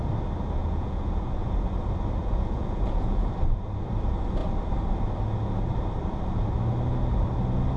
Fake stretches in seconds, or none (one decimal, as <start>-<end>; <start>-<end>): 0.6-1.5; 2.2-3.3